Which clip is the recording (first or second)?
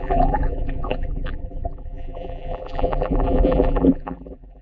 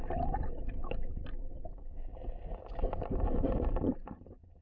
second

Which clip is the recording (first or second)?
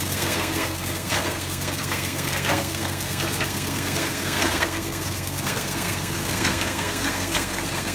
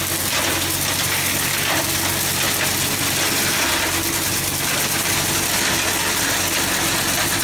second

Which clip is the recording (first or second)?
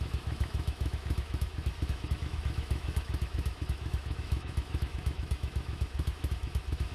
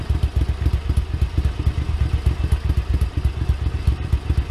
second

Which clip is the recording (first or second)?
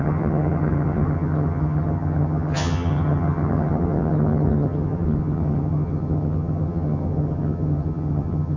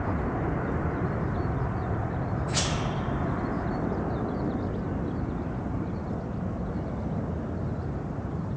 second